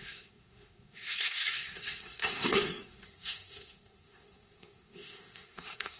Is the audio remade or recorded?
remade